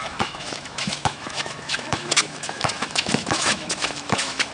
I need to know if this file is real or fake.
fake